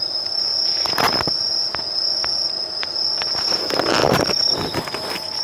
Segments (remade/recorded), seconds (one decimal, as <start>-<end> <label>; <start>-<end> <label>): 0.0-4.0 recorded; 4.0-4.8 remade; 4.8-5.4 recorded